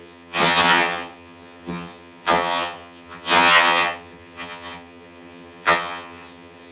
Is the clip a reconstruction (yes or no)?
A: yes